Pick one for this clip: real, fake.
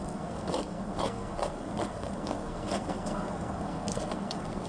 fake